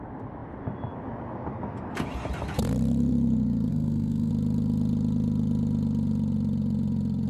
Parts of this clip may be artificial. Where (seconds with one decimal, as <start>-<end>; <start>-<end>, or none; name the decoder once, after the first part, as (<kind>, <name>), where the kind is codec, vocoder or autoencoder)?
3.7-4.3 (codec, SNAC)